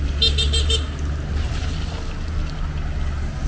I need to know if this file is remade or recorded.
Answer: recorded